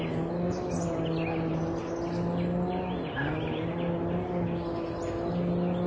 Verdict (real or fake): real